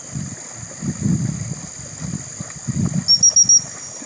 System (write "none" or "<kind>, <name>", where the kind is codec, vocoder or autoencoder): none